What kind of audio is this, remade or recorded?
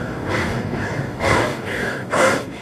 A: remade